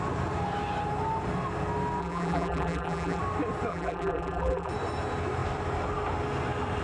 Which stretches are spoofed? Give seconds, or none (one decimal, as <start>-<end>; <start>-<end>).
2.0-3.2; 3.7-4.7